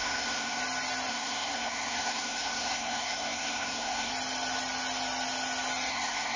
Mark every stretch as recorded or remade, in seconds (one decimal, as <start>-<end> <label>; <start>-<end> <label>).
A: 0.0-0.6 remade; 0.6-1.1 recorded; 1.1-4.1 remade; 4.1-5.9 recorded; 5.9-6.4 remade